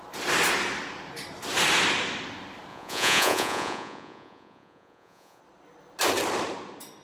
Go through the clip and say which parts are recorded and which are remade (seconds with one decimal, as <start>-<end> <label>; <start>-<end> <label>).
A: 0.0-2.7 recorded; 2.7-5.4 remade; 5.4-7.0 recorded